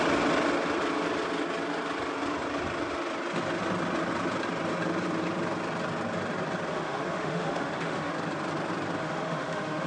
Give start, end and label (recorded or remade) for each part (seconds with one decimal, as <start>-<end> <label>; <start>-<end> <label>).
0.0-6.7 recorded; 6.7-8.1 remade; 8.1-9.0 recorded; 9.0-9.9 remade